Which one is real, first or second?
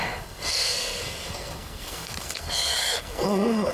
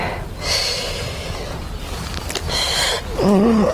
second